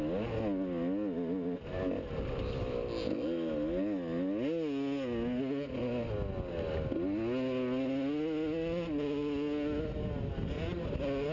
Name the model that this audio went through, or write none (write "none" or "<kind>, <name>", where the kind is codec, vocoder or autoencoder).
none